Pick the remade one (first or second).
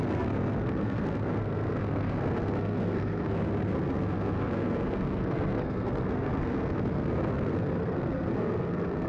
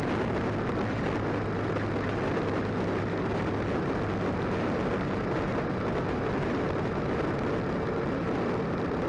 first